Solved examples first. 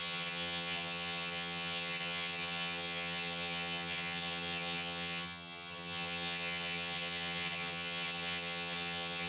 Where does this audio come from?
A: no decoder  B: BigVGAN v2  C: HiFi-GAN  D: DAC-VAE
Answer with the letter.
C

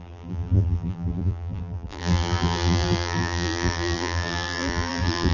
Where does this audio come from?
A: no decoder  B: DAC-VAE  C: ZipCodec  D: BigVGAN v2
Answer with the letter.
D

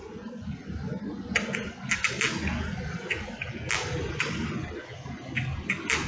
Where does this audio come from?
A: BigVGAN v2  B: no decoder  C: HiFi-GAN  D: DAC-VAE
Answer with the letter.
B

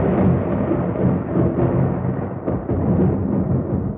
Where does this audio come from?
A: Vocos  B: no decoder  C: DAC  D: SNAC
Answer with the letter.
B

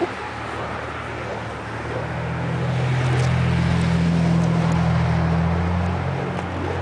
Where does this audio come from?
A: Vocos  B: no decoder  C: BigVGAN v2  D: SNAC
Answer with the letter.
B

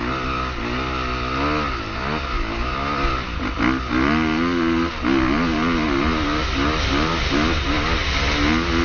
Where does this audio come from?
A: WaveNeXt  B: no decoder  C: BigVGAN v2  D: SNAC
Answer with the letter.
B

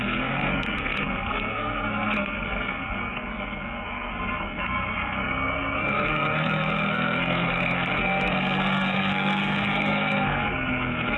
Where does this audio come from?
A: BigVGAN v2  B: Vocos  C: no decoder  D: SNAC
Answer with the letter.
D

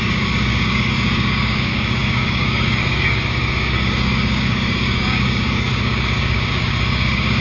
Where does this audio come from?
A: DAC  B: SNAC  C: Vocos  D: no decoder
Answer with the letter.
A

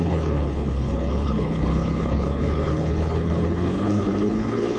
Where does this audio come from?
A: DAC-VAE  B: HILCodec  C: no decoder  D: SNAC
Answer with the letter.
B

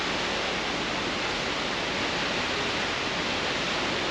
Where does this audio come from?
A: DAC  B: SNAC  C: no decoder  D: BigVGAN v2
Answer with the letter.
C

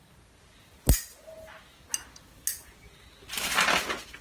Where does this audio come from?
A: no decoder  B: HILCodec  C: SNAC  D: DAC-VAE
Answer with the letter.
A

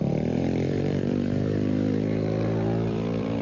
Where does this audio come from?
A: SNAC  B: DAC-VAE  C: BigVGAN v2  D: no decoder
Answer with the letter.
C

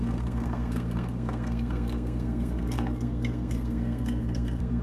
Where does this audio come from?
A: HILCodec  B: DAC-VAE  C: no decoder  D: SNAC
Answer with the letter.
D